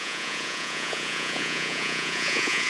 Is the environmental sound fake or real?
fake